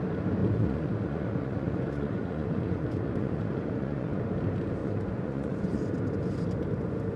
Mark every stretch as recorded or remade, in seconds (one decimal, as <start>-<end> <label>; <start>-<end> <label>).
0.0-0.4 recorded; 0.4-4.2 remade; 4.2-4.8 recorded; 4.8-5.8 remade; 5.8-7.2 recorded